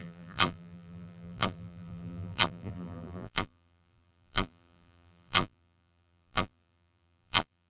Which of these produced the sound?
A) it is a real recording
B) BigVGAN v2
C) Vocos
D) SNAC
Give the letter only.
B